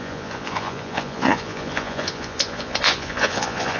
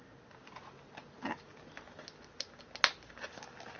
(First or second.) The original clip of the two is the second